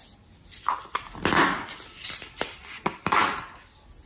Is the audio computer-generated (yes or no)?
no